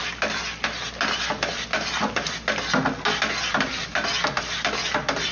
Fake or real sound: real